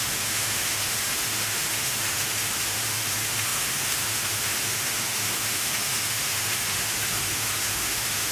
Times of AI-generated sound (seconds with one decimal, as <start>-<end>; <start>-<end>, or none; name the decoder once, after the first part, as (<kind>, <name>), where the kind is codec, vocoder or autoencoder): 0.0-8.3 (autoencoder, DAC-VAE)